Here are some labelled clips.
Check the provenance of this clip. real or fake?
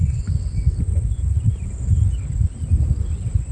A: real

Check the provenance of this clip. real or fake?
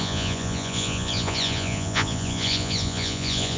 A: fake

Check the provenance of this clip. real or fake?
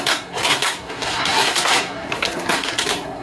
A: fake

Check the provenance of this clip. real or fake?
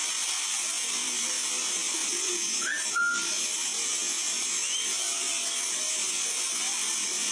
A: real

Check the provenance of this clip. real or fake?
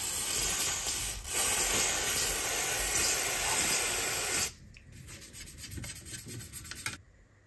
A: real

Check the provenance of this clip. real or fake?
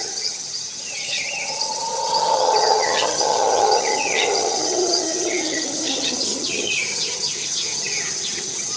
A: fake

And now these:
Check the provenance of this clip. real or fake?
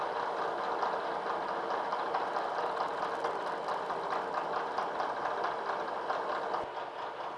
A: real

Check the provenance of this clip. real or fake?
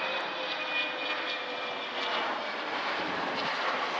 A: real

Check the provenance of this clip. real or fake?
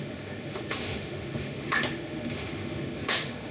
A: fake